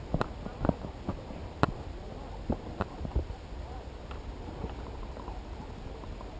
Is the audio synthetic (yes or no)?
no